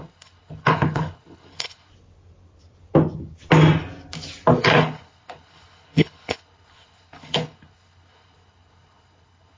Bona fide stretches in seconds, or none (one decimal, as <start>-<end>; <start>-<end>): 1.9-4.6